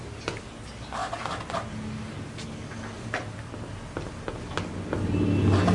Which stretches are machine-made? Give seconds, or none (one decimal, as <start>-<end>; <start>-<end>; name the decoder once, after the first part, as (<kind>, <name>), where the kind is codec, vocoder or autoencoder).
none